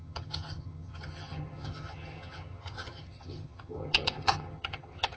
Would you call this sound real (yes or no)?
no